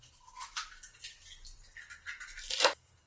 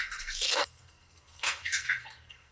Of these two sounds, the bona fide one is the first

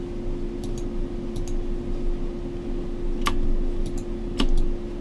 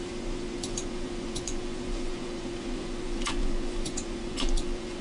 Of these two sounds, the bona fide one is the first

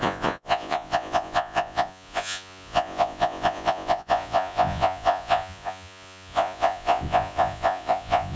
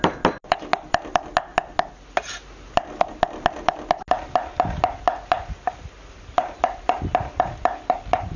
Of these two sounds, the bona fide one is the second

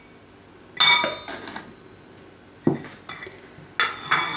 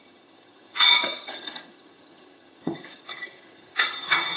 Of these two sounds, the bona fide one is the first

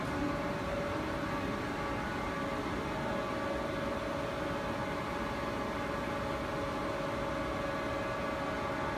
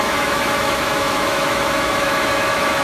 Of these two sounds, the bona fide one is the first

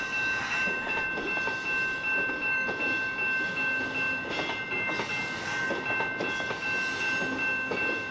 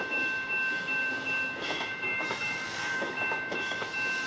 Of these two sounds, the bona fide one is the first